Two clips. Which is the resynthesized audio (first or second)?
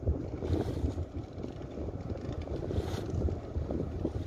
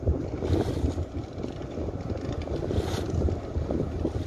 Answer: first